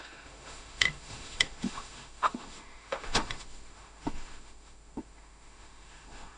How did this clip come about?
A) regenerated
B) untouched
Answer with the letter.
A